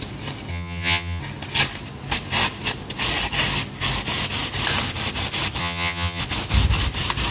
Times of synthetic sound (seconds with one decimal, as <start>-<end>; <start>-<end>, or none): 0.5-1.2; 5.6-6.2